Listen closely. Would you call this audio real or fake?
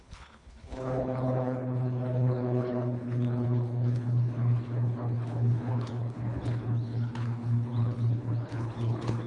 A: fake